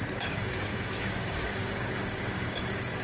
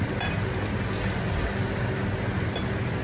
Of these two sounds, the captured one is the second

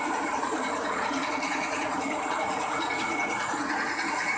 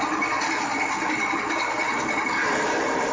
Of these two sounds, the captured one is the second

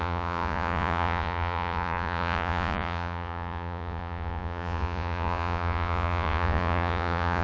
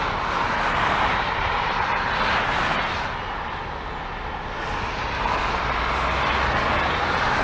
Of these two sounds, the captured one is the second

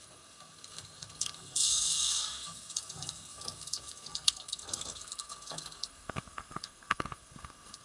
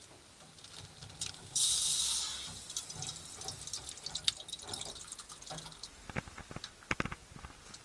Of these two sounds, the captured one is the second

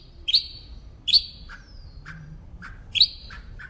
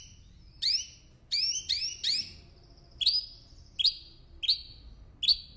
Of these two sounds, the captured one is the second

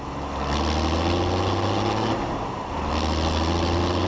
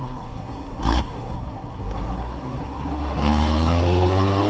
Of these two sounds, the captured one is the first